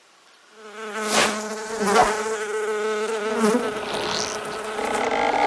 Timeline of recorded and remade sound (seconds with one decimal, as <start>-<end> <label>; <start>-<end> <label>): 0.0-5.5 recorded